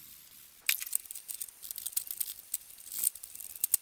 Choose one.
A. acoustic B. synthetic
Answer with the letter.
A